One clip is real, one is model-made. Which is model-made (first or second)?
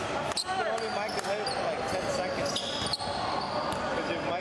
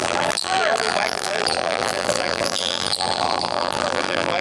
second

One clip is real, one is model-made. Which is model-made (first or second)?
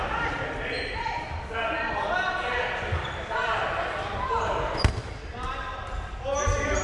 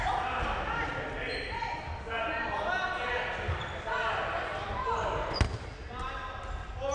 first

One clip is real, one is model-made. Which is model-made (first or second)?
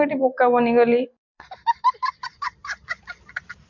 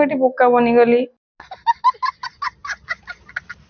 first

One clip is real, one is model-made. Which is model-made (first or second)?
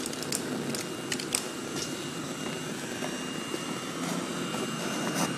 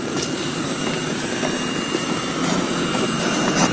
second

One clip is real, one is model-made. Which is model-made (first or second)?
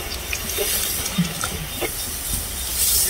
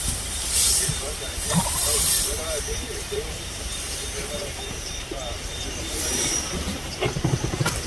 second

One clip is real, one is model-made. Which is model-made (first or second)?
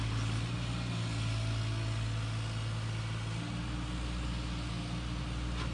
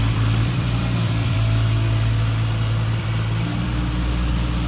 second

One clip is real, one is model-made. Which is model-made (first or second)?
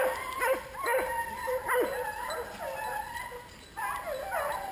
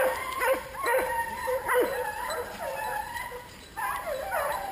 second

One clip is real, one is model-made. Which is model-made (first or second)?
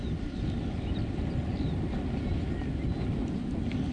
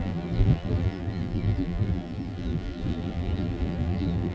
second